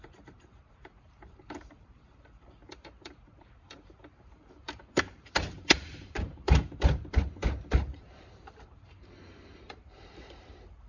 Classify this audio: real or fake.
fake